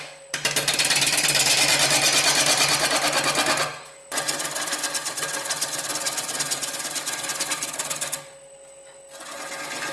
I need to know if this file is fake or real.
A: real